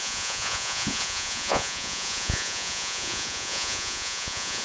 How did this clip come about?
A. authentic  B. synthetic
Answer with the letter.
B